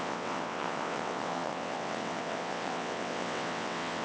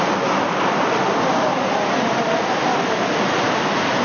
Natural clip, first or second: second